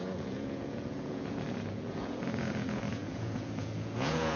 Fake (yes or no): yes